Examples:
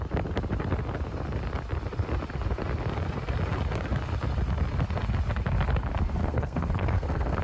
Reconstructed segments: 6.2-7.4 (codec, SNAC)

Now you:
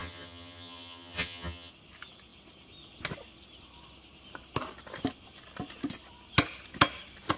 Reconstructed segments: 0.0-1.7 (vocoder, HiFi-GAN)

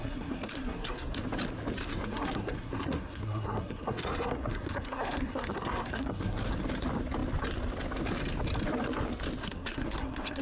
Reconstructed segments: 0.0-1.2 (codec, SNAC); 1.8-6.5; 9.4-10.4

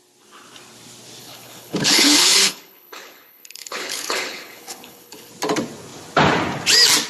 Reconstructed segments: 1.2-5.3 (codec, HILCodec)